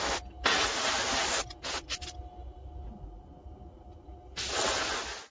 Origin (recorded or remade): recorded